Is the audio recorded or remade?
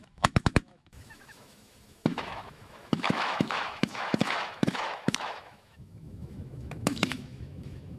remade